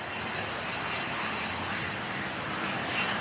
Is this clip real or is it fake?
real